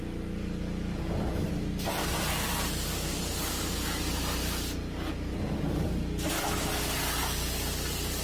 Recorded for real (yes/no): yes